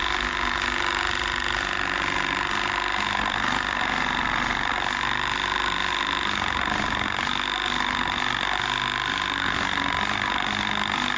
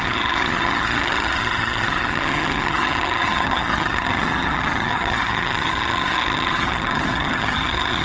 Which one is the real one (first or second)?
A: first